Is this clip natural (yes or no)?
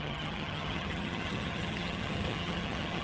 no